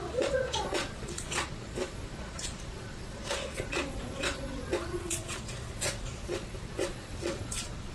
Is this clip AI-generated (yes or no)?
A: yes